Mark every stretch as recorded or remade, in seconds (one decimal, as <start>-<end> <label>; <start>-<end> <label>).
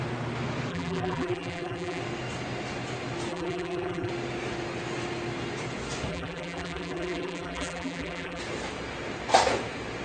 0.0-0.7 recorded; 0.7-2.0 remade; 2.0-3.3 recorded; 3.3-4.1 remade; 4.1-6.1 recorded; 6.1-8.4 remade; 8.4-10.0 recorded